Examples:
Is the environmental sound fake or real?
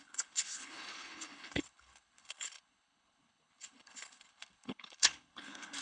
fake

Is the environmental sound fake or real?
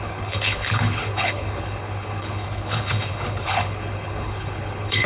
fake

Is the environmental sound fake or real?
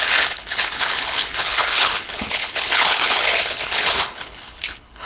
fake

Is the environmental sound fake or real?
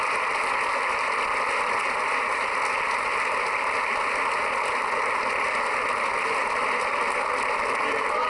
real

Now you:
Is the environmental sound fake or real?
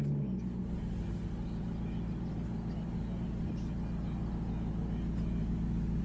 real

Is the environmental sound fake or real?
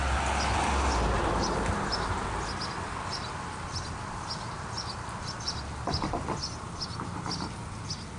real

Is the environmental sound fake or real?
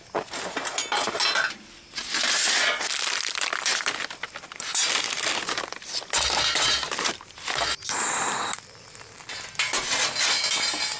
real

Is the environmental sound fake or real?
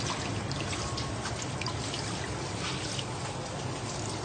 real